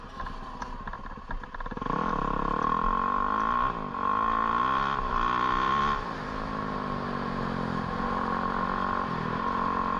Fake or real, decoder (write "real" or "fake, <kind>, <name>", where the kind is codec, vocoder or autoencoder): real